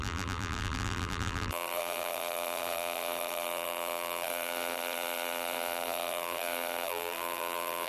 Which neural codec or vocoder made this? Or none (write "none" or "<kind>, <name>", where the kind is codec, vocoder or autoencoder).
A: vocoder, BigVGAN v2